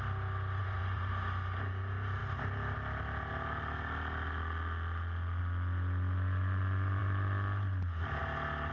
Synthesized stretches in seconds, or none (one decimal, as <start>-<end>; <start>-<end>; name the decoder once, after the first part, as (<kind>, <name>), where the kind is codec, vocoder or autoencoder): 0.6-1.1 (vocoder, Vocos)